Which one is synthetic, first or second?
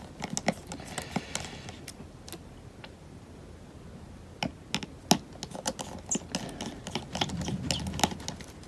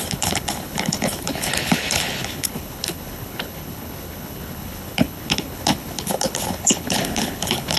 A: second